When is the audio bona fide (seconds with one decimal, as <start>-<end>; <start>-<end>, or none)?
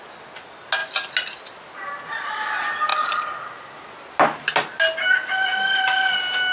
0.0-6.5